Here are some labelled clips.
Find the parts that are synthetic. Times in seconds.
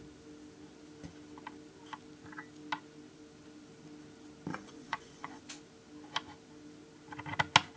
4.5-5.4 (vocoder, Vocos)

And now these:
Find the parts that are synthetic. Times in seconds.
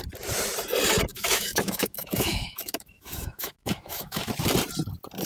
1.1-4.3 (autoencoder, DAC-VAE)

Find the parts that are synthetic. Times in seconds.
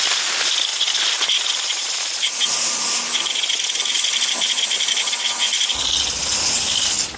none